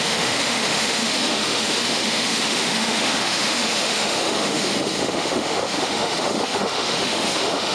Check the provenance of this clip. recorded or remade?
remade